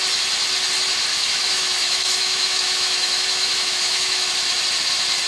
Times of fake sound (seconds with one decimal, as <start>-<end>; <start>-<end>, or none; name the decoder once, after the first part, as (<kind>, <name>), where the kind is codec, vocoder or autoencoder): 1.1-4.3 (autoencoder, DAC-VAE)

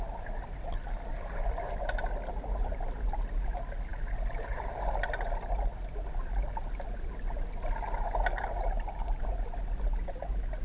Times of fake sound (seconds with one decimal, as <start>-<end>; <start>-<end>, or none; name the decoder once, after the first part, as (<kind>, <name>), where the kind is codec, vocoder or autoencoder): none